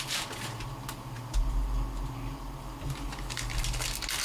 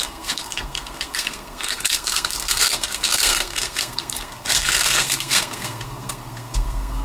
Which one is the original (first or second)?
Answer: first